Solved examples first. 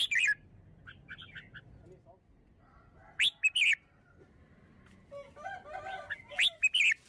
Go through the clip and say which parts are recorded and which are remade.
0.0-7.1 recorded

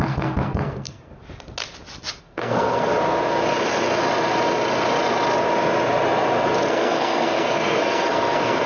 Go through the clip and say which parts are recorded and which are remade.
0.0-1.1 remade; 1.1-2.2 recorded; 2.2-2.9 remade; 2.9-6.7 recorded; 6.7-8.7 remade

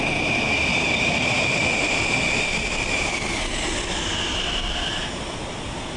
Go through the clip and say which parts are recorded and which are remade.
0.0-6.0 recorded

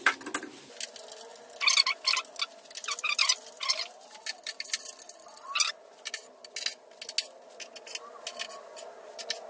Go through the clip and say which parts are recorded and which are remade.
0.0-3.6 recorded; 3.6-5.7 remade; 5.7-9.5 recorded

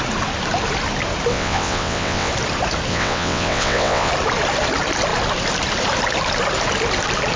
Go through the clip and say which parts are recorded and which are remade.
0.0-1.3 recorded; 1.3-2.3 remade; 2.3-2.9 recorded; 2.9-4.1 remade; 4.1-7.4 recorded